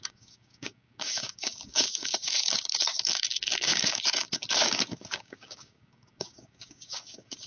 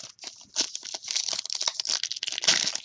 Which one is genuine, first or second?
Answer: second